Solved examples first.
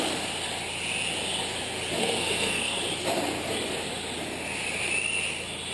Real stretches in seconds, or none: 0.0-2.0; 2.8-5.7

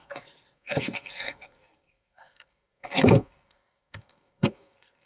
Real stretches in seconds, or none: none